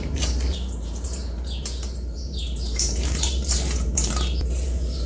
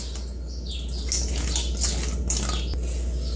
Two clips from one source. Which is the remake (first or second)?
first